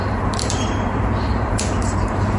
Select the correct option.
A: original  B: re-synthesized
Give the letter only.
B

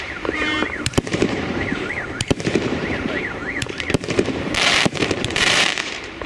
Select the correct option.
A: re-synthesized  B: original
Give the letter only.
A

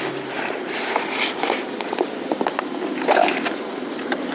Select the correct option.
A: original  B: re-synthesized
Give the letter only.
A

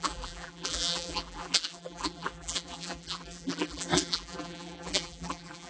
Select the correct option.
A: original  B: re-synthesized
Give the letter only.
B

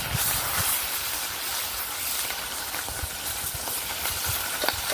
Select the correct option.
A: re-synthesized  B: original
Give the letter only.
B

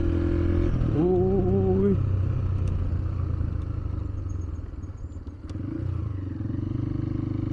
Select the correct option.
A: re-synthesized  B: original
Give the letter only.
B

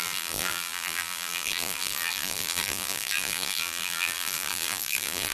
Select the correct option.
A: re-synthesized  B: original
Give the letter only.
A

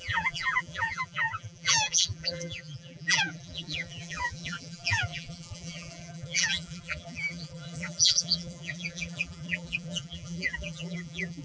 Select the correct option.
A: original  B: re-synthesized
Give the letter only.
B